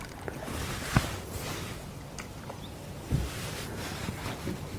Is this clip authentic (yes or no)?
yes